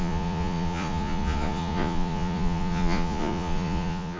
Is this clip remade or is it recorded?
remade